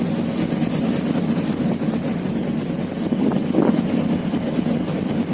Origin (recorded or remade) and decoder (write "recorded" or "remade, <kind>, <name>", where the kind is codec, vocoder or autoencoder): recorded